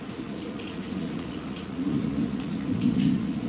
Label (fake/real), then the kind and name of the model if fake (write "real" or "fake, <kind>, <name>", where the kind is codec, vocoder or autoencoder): fake, vocoder, Vocos